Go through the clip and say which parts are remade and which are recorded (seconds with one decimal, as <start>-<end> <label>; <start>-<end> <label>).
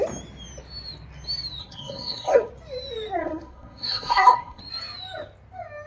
0.0-1.6 recorded; 1.6-2.5 remade; 2.5-3.2 recorded; 3.2-4.6 remade; 4.6-5.9 recorded